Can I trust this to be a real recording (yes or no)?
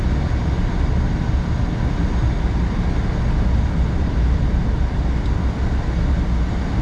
yes